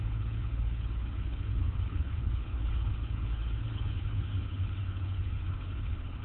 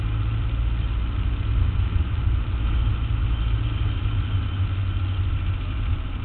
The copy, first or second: first